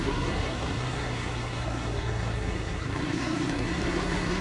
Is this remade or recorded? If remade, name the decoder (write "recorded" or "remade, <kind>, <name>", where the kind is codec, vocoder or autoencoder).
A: remade, codec, SNAC